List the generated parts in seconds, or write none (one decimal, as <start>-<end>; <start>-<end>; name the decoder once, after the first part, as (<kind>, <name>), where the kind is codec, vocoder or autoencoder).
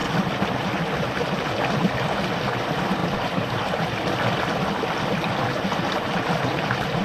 none